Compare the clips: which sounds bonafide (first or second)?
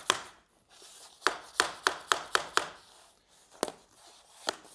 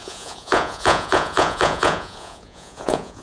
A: first